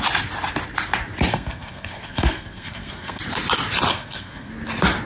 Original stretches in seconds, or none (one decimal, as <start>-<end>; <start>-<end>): 0.0-1.3; 3.2-3.9; 4.5-5.1